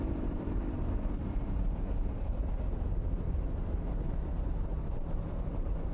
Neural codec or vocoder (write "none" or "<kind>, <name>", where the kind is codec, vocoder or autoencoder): vocoder, BigVGAN v2